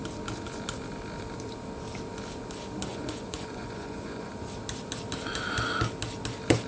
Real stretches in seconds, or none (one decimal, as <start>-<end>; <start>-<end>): 0.0-2.9; 4.3-6.7